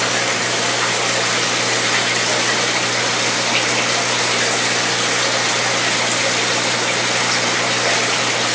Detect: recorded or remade recorded